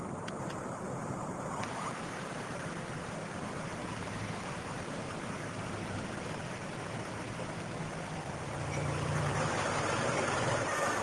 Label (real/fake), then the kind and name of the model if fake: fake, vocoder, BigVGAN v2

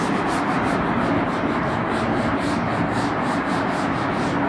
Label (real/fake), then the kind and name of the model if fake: real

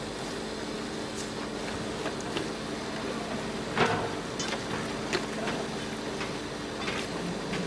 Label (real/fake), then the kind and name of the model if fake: real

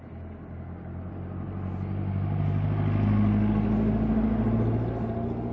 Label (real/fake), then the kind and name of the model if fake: real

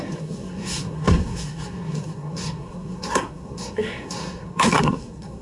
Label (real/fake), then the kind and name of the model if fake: fake, codec, SNAC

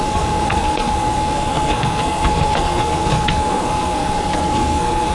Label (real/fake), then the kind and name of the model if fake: fake, codec, SNAC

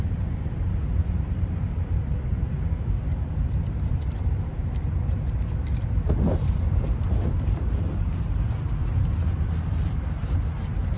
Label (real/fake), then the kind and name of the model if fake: fake, vocoder, BigVGAN v2